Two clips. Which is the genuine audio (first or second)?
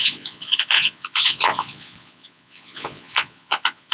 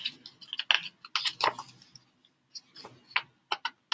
second